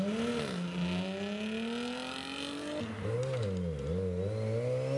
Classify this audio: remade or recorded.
recorded